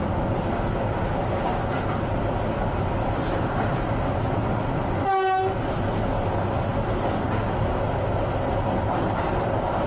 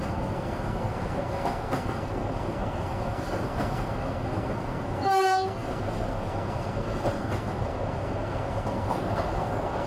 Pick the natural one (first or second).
first